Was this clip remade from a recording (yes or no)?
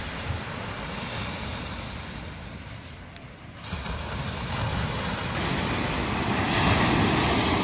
no